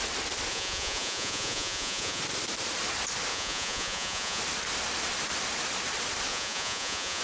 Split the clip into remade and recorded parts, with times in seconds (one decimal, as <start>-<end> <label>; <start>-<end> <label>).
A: 0.0-0.5 recorded; 0.5-2.2 remade; 2.2-3.3 recorded; 3.3-4.4 remade; 4.4-6.3 recorded; 6.3-7.2 remade